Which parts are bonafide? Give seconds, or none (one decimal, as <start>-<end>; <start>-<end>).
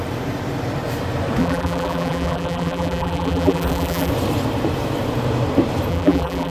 0.0-1.4; 4.1-5.9